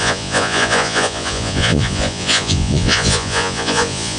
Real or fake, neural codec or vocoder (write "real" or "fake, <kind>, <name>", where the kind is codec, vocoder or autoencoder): fake, vocoder, Vocos